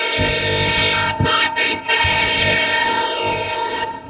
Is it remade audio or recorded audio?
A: remade